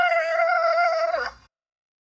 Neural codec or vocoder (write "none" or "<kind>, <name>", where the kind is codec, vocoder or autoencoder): codec, SNAC